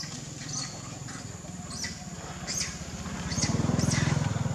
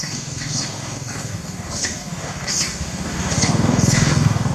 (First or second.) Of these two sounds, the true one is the first